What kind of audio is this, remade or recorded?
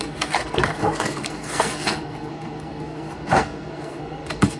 remade